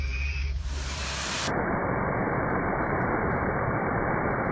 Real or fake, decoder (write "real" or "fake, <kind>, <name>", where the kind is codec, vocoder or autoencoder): fake, vocoder, BigVGAN v2